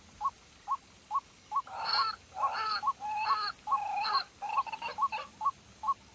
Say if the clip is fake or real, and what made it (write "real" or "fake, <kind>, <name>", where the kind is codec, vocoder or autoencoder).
real